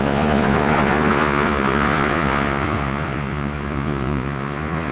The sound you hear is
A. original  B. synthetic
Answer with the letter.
B